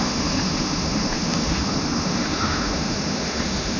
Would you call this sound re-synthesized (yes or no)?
yes